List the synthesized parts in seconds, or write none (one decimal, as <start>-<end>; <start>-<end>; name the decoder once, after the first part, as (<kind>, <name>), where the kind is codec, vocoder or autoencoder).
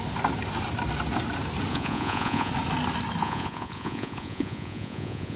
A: 1.7-2.5 (vocoder, Vocos); 3.2-5.4